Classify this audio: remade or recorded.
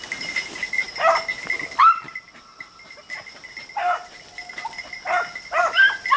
recorded